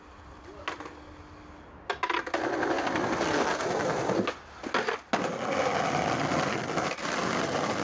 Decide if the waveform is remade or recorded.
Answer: recorded